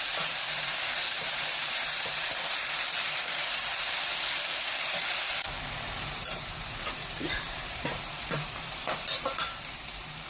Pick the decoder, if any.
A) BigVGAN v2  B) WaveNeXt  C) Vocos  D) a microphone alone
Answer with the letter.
A